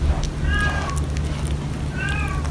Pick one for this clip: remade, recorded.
recorded